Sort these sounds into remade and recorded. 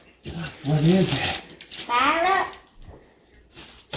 recorded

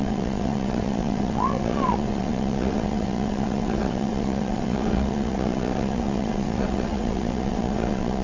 remade